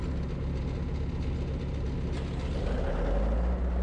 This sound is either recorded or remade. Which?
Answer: recorded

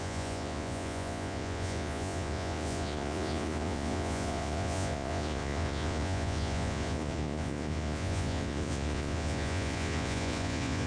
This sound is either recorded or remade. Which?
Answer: remade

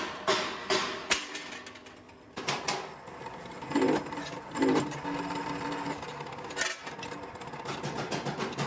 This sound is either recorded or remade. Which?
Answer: recorded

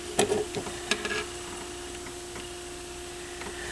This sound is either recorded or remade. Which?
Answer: recorded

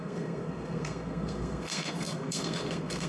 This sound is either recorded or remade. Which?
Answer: remade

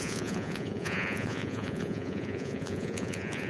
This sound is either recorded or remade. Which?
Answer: remade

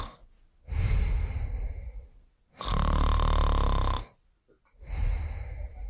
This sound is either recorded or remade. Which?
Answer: recorded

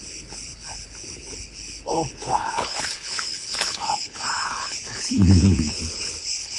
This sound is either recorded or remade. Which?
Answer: remade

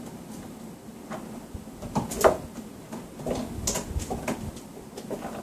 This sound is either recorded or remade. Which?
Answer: recorded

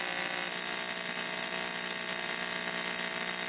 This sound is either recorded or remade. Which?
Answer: recorded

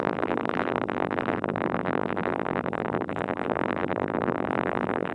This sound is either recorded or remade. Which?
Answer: remade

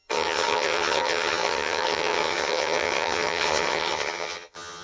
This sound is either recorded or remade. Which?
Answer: remade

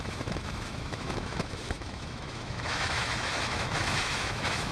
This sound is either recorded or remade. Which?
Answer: remade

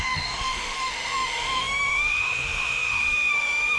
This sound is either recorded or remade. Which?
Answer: remade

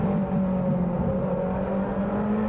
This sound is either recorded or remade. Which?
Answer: recorded